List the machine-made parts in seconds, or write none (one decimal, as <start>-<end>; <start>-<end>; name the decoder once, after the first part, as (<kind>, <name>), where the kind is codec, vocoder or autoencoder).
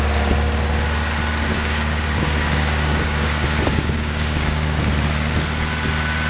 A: 1.5-4.9 (codec, DAC)